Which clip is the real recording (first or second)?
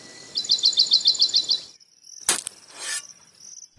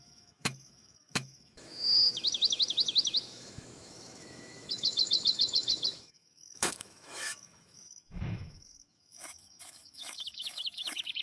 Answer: first